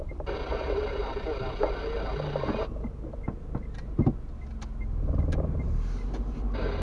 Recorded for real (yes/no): yes